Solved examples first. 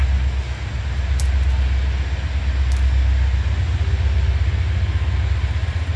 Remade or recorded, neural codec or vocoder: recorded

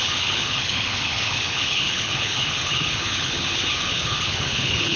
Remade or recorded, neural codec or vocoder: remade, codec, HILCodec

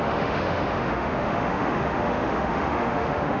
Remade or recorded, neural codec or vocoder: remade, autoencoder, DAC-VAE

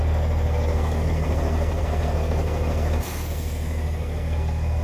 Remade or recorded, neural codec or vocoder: remade, codec, SNAC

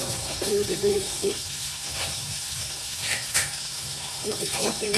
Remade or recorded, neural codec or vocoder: remade, codec, SNAC